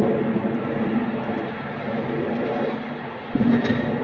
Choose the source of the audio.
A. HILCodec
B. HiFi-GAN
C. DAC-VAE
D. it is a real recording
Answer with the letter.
D